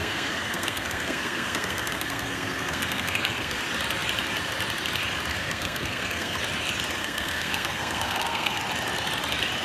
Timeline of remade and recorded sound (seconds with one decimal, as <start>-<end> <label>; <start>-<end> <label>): 0.0-3.6 remade; 3.6-5.3 recorded; 5.3-6.4 remade; 6.4-7.0 recorded; 7.0-8.6 remade; 8.6-9.6 recorded